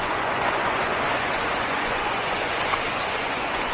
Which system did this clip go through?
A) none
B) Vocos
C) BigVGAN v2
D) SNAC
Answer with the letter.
B